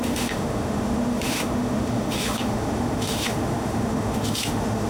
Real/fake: fake